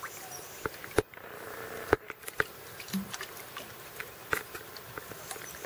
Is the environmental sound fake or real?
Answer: real